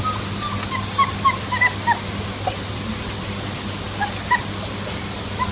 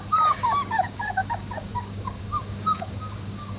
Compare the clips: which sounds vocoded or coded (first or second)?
second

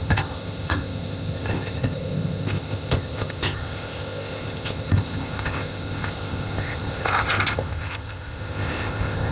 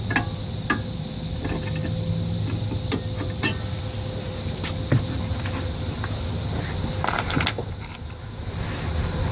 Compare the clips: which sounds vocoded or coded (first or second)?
first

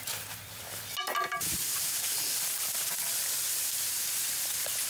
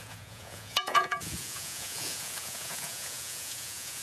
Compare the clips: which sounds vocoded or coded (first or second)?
second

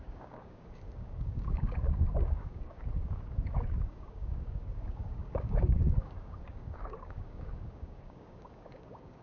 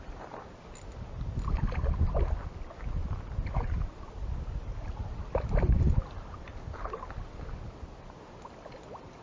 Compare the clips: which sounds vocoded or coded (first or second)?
first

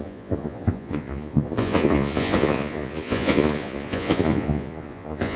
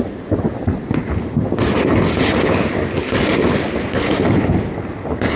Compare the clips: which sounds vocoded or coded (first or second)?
first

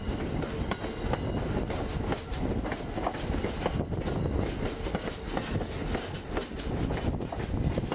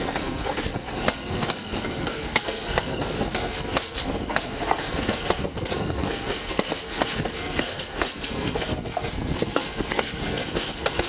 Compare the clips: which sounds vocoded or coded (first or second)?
second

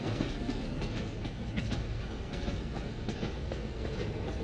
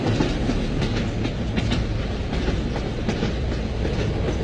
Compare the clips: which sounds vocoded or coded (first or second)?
first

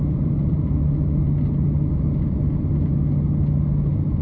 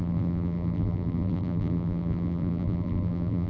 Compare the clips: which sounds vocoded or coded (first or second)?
second